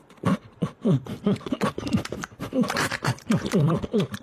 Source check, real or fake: fake